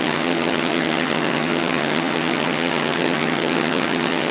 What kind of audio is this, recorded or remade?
remade